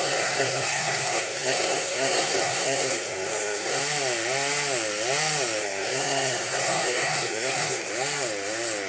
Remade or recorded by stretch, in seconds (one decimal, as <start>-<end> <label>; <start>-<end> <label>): 0.0-3.8 remade; 3.8-5.6 recorded; 5.6-7.9 remade; 7.9-8.9 recorded